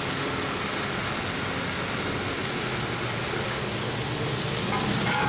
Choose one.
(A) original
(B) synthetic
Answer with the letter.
A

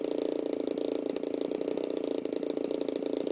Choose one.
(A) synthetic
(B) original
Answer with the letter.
B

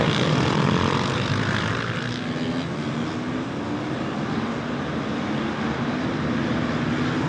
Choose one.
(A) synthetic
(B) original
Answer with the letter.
B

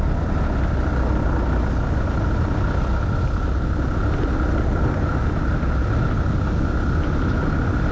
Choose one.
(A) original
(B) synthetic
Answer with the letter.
A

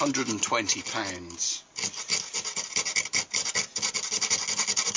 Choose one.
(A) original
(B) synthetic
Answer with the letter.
A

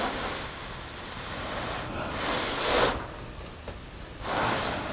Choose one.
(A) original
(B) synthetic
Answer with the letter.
A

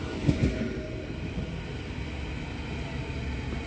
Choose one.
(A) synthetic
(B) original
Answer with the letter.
B